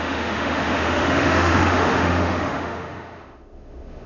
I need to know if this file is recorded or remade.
remade